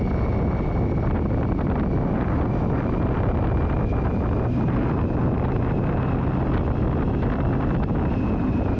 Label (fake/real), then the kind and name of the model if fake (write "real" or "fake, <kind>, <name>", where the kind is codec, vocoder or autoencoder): real